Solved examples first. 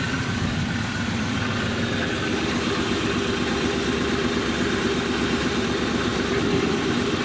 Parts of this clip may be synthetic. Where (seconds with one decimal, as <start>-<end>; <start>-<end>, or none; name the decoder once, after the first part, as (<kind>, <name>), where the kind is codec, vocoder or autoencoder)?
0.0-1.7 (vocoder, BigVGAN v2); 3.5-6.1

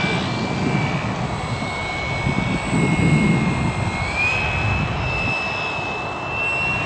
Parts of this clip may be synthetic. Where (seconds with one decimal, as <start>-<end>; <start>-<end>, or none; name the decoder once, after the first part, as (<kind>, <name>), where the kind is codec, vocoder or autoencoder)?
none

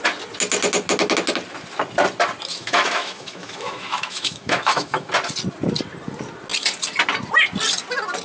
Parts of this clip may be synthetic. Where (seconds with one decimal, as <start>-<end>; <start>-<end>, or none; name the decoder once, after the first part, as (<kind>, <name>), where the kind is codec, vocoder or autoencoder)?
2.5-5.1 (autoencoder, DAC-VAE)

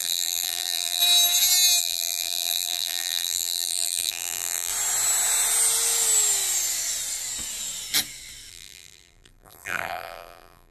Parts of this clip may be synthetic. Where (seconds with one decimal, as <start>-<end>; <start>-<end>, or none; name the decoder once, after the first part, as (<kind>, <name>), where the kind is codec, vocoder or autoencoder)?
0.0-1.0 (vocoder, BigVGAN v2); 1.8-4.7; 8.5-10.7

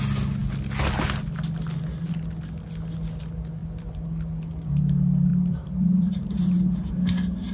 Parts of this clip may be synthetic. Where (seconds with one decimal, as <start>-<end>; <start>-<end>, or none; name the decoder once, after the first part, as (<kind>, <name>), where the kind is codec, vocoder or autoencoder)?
5.3-6.9 (vocoder, BigVGAN v2)

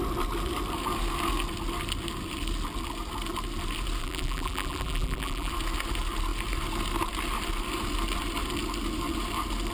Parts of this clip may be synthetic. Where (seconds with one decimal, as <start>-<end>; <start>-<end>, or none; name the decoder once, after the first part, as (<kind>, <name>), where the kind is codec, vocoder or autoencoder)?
4.0-5.5 (vocoder, BigVGAN v2)